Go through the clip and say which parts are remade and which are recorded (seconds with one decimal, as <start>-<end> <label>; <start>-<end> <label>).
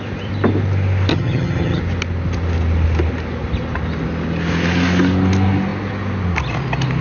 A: 0.0-1.1 recorded; 1.1-1.8 remade; 1.8-7.0 recorded